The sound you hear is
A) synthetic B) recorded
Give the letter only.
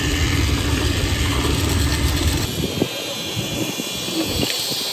A